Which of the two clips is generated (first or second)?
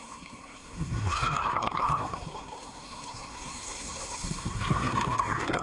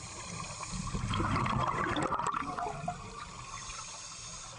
first